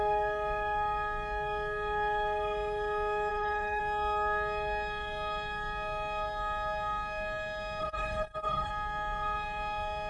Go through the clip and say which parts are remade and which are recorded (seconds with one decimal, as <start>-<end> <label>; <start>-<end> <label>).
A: 0.0-3.3 recorded; 3.3-3.8 remade; 3.8-7.8 recorded; 7.8-8.7 remade; 8.7-10.1 recorded